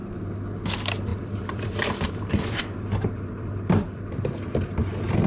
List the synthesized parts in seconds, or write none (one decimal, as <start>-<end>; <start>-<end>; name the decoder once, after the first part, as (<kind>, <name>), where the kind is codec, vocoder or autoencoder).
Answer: 1.1-4.3 (vocoder, BigVGAN v2)